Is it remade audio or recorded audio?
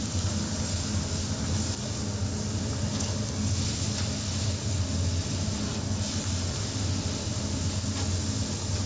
recorded